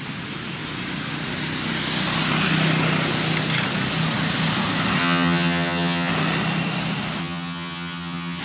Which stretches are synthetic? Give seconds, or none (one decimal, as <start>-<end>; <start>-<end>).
5.0-6.1; 7.2-8.4